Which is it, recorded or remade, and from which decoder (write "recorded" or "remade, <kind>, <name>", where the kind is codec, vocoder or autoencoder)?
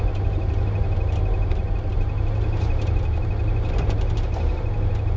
recorded